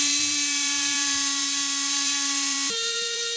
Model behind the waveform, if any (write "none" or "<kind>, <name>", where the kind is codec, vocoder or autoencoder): vocoder, BigVGAN v2